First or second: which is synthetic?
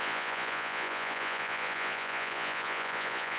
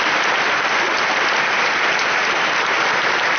first